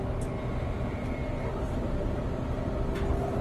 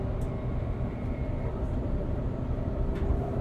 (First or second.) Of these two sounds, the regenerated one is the second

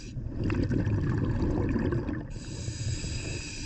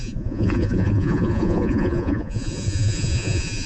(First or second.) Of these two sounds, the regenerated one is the second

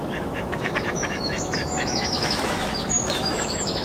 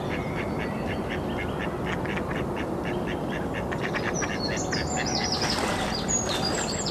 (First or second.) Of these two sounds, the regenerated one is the first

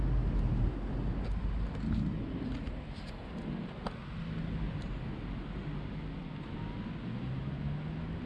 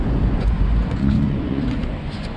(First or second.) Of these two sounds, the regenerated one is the second